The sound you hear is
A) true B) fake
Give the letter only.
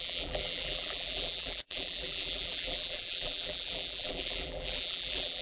B